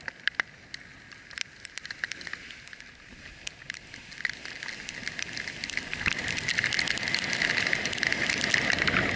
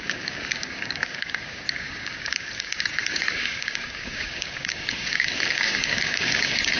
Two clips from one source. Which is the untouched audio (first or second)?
first